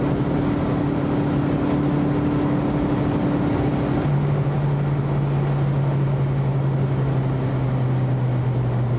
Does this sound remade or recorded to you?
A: recorded